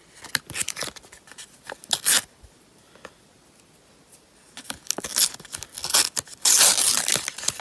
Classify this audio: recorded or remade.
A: recorded